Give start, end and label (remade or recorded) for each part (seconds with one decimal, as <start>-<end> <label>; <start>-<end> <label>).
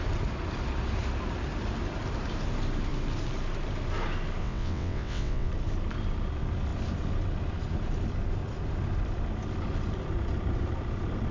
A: 0.0-4.4 recorded; 4.4-5.5 remade; 5.5-11.3 recorded